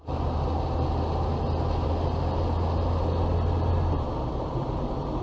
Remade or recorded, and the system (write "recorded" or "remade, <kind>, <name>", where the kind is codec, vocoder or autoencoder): recorded